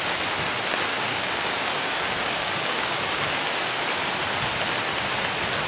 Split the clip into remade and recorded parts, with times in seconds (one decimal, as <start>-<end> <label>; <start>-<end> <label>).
0.0-0.9 recorded; 0.9-3.7 remade; 3.7-5.7 recorded